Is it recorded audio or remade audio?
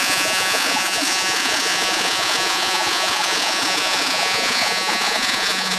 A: remade